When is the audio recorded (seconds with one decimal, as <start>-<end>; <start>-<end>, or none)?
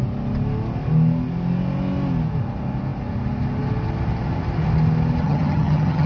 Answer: 0.0-5.2